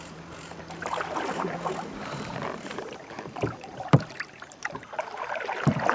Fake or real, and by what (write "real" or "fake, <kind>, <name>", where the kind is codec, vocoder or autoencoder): fake, vocoder, BigVGAN v2